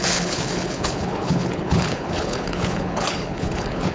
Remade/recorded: remade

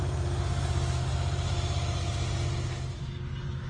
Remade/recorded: recorded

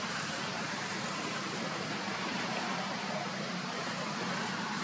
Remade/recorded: remade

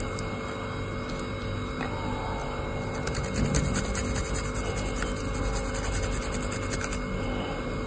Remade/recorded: recorded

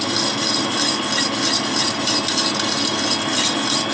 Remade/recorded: recorded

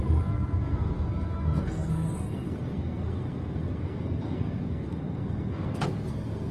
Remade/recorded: remade